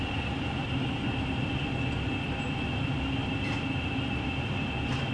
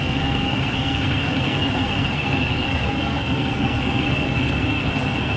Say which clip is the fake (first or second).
second